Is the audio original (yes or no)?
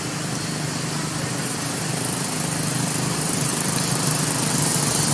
yes